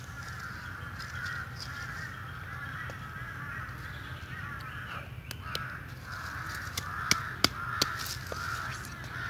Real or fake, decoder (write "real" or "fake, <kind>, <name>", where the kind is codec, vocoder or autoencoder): real